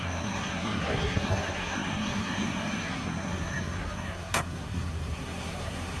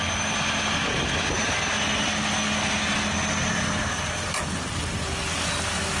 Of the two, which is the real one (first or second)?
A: second